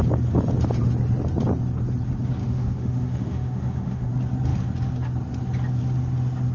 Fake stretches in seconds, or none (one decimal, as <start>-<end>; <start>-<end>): 2.4-4.1